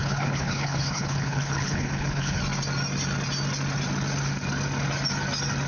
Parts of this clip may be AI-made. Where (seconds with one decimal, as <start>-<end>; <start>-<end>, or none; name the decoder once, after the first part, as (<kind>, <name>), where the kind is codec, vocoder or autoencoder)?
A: 0.0-2.4 (codec, HILCodec)